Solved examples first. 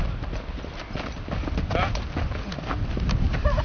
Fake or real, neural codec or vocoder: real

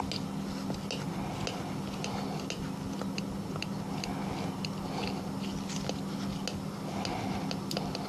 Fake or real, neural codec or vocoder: real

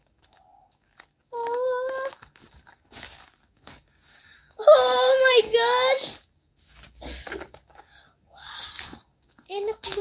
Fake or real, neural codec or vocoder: fake, codec, DAC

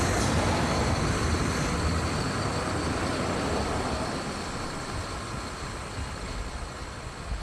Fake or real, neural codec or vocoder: real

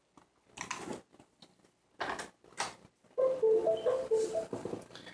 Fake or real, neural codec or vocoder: real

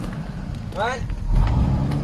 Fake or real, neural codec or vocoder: real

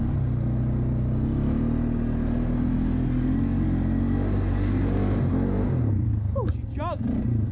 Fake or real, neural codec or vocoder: real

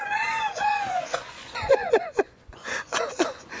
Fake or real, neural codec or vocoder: fake, vocoder, Vocos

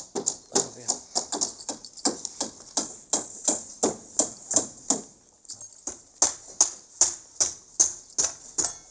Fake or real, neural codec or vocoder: real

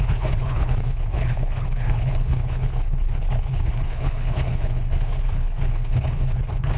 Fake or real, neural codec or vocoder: fake, codec, HILCodec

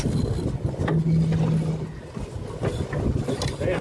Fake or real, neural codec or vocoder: real